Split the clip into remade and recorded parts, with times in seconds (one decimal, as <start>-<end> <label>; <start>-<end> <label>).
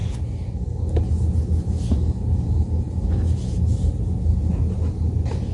0.0-5.5 recorded